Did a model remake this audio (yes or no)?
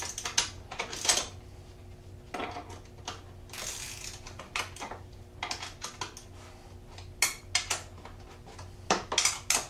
no